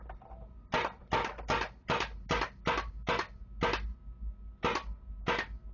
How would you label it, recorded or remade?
recorded